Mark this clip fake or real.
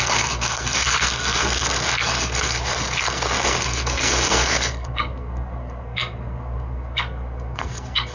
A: fake